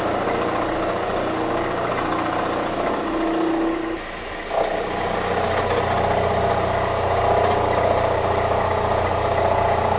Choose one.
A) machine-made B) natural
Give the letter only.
B